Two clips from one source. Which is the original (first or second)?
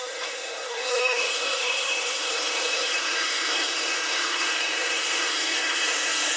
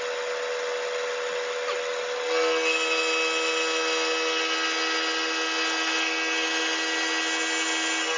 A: second